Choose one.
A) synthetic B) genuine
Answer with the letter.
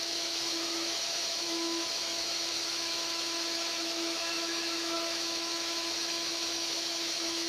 A